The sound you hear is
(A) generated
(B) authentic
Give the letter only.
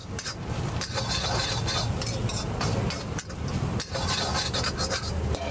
B